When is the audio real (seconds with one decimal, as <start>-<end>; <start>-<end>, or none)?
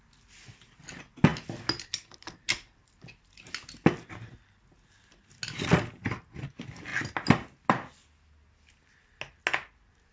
0.0-10.1